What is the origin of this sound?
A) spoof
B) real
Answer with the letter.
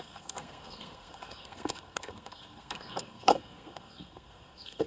A